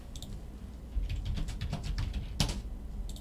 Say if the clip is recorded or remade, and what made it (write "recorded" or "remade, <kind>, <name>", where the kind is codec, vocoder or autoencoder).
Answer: recorded